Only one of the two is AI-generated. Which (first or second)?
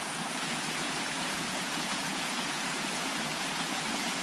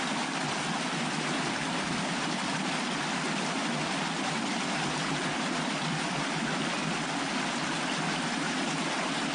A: first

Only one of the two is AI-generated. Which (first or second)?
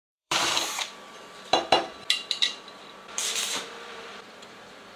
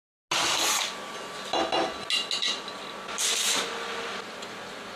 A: first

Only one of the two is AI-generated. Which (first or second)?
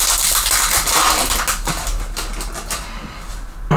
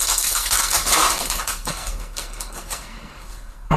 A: second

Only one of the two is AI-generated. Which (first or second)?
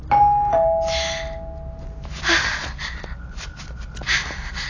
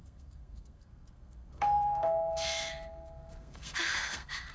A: second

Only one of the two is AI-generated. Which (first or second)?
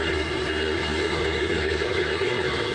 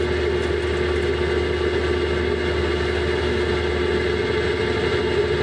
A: first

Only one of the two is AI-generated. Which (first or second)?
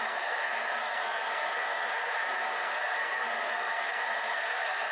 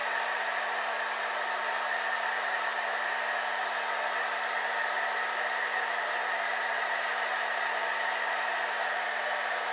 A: first